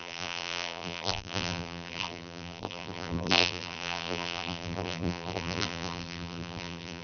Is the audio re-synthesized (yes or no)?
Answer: yes